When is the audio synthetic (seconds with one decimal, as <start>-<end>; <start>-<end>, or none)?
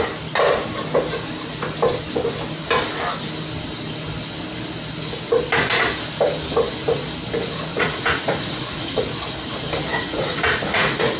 7.7-9.0; 9.9-11.2